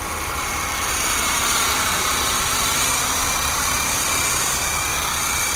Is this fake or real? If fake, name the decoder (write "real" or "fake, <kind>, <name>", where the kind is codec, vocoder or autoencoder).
fake, vocoder, BigVGAN v2